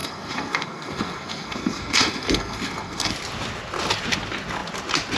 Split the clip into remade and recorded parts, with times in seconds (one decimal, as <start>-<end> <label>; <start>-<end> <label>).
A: 0.0-3.1 remade; 3.1-5.2 recorded